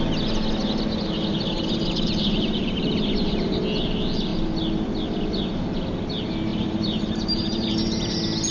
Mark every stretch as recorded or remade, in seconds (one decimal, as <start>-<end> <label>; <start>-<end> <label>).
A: 0.0-1.3 recorded; 1.3-3.6 remade; 3.6-6.5 recorded; 6.5-8.1 remade; 8.1-8.5 recorded